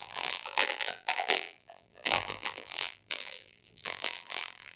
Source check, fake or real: fake